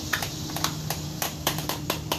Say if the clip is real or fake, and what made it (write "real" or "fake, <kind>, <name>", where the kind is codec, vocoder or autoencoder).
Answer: fake, vocoder, BigVGAN v2